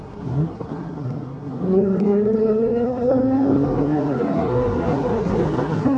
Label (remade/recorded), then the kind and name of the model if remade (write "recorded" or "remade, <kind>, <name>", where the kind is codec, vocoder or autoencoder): remade, codec, SNAC